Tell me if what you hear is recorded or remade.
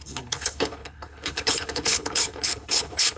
remade